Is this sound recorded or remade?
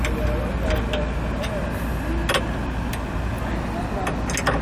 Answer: recorded